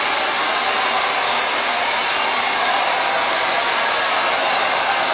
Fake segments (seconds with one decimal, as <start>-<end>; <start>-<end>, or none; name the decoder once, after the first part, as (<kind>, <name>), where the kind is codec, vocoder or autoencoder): none